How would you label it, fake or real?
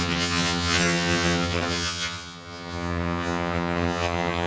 fake